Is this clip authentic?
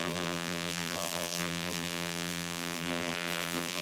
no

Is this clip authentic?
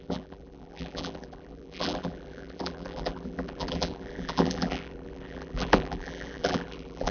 no